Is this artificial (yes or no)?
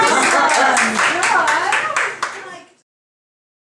no